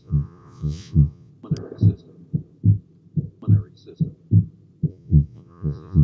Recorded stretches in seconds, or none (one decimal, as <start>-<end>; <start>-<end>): 1.3-4.9